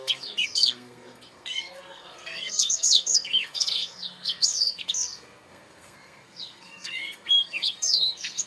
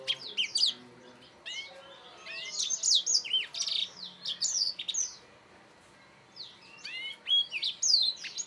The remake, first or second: first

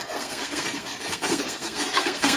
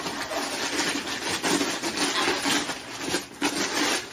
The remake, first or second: first